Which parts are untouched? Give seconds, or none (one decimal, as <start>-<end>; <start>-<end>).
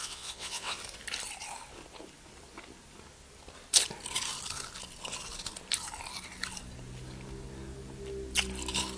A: 0.8-9.0